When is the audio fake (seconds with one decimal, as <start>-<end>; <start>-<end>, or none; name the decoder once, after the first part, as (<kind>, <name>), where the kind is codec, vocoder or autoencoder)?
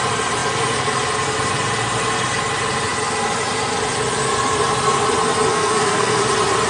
5.5-6.2 (codec, SNAC)